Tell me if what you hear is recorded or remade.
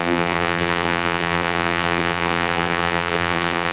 remade